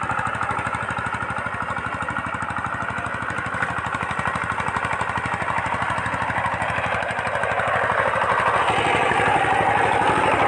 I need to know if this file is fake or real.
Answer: real